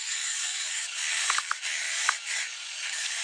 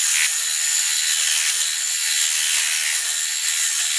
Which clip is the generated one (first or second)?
first